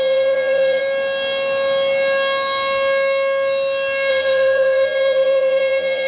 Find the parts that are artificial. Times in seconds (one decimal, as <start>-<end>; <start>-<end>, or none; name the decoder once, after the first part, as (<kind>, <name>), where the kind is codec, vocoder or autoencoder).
0.0-0.8 (vocoder, BigVGAN v2); 4.1-6.1